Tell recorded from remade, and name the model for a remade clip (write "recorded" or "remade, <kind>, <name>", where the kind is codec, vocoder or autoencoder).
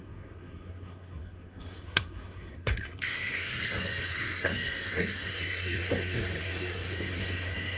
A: remade, codec, SNAC